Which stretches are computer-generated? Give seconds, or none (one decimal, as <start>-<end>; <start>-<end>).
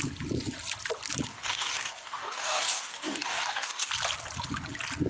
1.3-3.9